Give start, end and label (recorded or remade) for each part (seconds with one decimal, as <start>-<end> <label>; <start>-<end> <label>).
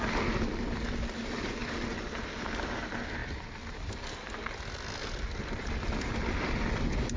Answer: 0.0-7.2 recorded